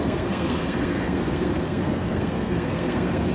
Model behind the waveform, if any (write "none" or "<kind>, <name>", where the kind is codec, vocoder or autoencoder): codec, SNAC